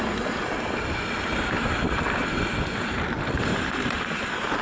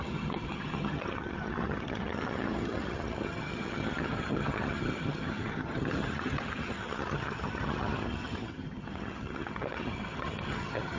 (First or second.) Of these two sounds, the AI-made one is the second